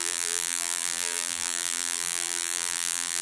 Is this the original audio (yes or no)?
no